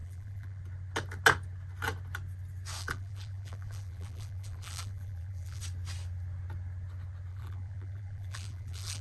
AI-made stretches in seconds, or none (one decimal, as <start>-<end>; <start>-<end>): 0.0-0.6; 2.8-5.6; 7.3-9.0